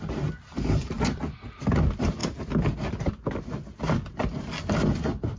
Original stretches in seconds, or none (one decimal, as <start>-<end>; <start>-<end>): 0.0-5.4